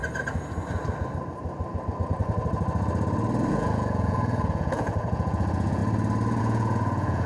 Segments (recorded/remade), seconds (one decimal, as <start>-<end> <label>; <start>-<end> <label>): 0.0-3.5 recorded; 3.5-5.8 remade; 5.8-6.4 recorded; 6.4-7.3 remade